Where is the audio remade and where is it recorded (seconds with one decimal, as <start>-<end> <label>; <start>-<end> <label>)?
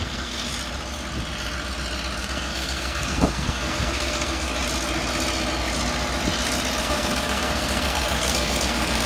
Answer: 0.0-0.5 remade; 0.5-2.2 recorded; 2.2-4.5 remade; 4.5-6.8 recorded; 6.8-9.1 remade